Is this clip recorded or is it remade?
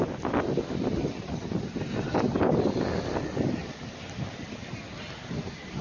recorded